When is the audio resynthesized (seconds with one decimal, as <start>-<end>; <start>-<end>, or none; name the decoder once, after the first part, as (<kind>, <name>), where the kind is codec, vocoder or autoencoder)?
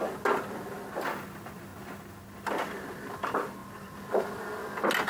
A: none